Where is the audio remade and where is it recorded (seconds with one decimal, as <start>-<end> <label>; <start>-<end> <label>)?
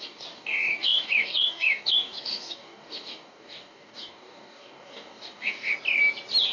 0.0-5.7 remade; 5.7-6.5 recorded